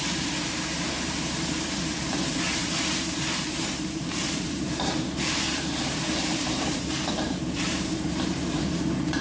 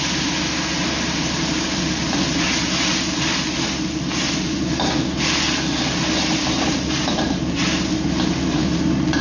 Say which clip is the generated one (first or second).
first